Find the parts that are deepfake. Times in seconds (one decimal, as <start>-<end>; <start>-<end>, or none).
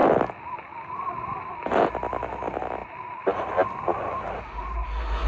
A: none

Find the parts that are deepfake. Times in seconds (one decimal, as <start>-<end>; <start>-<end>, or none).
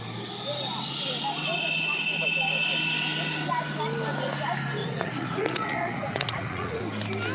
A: 4.8-6.8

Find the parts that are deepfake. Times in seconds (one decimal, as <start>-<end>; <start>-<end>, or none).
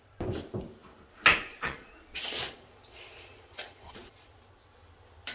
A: 1.5-4.3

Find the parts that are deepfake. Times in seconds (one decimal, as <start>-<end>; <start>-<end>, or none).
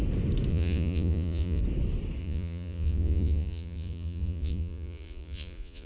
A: 0.5-1.6; 2.2-5.9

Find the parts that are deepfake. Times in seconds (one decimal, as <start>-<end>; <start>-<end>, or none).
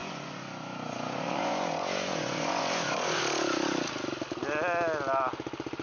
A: 0.0-3.2